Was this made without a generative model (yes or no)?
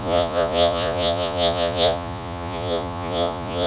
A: no